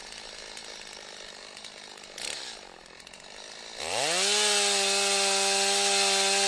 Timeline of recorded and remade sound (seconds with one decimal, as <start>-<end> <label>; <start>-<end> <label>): 0.0-3.6 remade; 3.6-6.5 recorded